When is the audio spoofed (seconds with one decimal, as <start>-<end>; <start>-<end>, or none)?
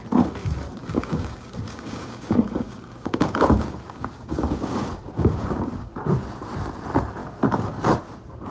0.8-5.9